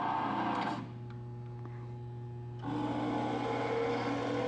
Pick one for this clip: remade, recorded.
recorded